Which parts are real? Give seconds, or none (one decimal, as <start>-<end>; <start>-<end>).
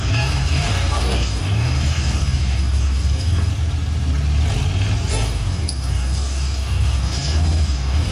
3.5-5.1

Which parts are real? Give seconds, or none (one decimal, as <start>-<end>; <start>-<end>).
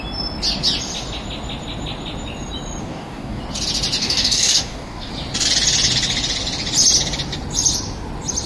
0.0-2.8; 3.4-4.0; 5.1-8.5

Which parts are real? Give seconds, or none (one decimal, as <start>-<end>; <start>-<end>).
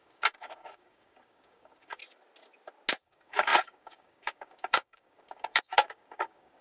2.0-3.0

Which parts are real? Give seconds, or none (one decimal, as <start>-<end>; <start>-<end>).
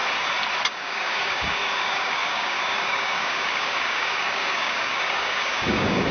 0.0-0.7